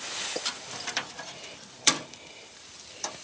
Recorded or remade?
remade